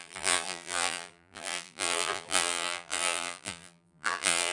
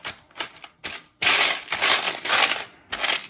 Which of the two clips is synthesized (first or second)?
first